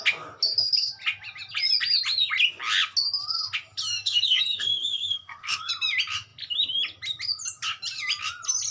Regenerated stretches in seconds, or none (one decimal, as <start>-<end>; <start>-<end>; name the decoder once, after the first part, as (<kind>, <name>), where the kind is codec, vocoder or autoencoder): 3.9-5.7 (codec, SNAC)